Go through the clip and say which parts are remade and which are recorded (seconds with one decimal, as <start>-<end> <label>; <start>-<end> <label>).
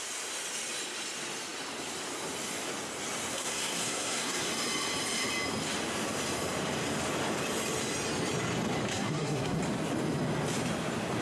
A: 0.0-3.3 recorded; 3.3-4.5 remade; 4.5-8.9 recorded; 8.9-9.6 remade; 9.6-11.2 recorded